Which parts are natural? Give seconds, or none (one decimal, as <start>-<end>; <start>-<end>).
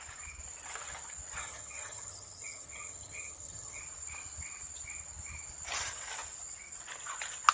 0.0-1.4; 3.8-7.5